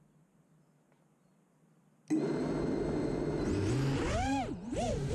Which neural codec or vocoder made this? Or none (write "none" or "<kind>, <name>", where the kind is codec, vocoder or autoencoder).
none